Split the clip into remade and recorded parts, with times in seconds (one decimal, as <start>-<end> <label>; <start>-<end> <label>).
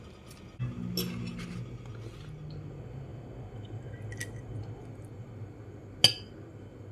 0.0-6.9 recorded